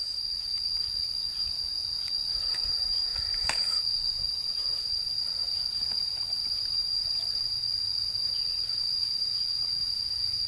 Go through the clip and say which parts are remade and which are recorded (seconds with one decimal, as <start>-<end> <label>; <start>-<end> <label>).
0.0-10.5 remade